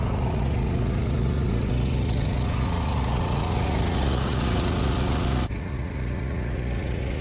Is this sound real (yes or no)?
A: no